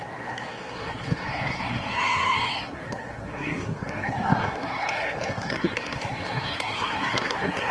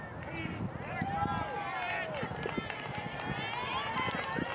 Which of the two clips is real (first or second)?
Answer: second